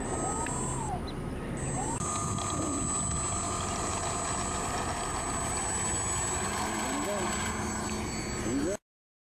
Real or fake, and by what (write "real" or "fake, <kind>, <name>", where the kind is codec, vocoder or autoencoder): real